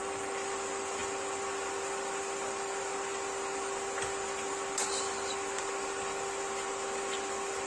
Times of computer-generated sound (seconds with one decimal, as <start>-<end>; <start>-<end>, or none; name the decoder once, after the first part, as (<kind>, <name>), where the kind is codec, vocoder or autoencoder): none